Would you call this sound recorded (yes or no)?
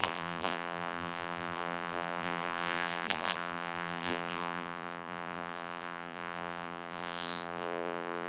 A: no